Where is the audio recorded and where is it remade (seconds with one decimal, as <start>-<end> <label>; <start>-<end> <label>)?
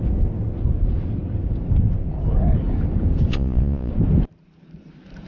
0.0-3.3 recorded; 3.3-3.9 remade; 3.9-5.3 recorded